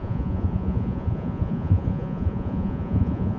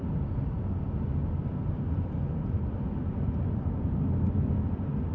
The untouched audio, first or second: second